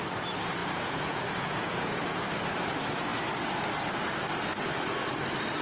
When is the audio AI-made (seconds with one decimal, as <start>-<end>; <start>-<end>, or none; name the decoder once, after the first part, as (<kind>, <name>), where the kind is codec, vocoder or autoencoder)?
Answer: 0.6-2.2 (vocoder, Vocos)